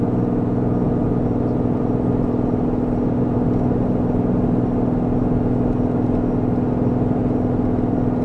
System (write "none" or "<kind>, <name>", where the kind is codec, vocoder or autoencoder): none